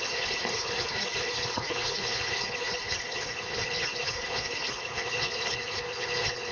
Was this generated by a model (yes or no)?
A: yes